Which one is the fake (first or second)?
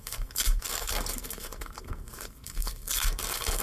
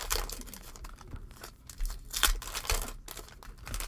first